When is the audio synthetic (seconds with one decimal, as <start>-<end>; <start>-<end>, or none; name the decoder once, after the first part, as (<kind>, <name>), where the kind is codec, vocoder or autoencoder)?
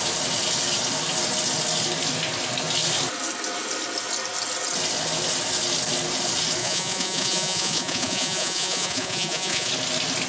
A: 6.6-9.7 (vocoder, Vocos)